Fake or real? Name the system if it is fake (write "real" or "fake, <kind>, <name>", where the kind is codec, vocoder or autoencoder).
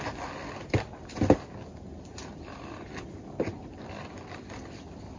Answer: real